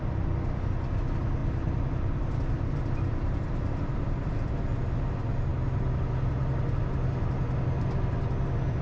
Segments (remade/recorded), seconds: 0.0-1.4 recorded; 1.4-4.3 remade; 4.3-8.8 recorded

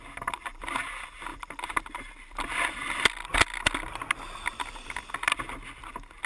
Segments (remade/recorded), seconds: 0.0-6.3 recorded